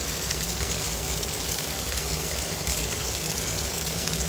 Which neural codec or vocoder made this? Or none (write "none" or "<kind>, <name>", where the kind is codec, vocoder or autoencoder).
codec, SNAC